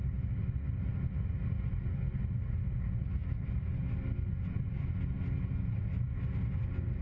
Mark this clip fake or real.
real